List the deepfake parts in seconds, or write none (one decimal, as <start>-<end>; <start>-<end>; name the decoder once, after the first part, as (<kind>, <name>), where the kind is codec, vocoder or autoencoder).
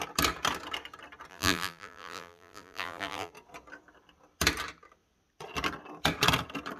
1.3-3.3 (vocoder, BigVGAN v2)